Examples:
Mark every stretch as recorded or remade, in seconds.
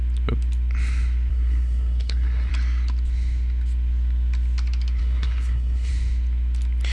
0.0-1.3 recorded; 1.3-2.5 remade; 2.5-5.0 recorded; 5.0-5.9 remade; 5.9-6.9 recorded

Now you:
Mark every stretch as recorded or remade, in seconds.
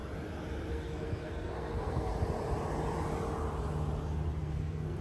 0.0-0.7 recorded; 0.7-2.1 remade; 2.1-4.4 recorded; 4.4-5.0 remade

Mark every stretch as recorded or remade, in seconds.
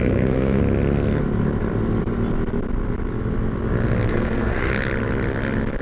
0.0-0.6 remade; 0.6-4.1 recorded; 4.1-4.7 remade; 4.7-5.8 recorded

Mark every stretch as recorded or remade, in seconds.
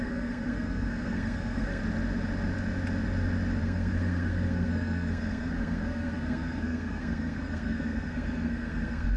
0.0-1.8 remade; 1.8-3.6 recorded; 3.6-9.2 remade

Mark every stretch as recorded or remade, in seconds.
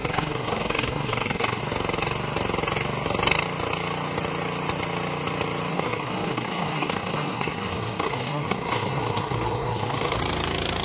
0.0-1.6 remade; 1.6-5.7 recorded; 5.7-10.2 remade; 10.2-10.8 recorded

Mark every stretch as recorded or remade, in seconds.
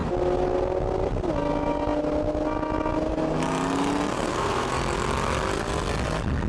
0.0-4.1 recorded; 4.1-4.7 remade; 4.7-6.5 recorded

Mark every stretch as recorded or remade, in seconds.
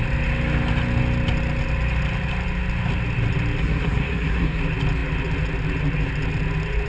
0.0-3.6 recorded; 3.6-4.6 remade; 4.6-6.9 recorded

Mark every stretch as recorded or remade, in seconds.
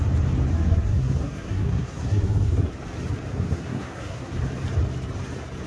0.0-0.5 recorded; 0.5-2.7 remade; 2.7-3.3 recorded; 3.3-4.4 remade; 4.4-5.7 recorded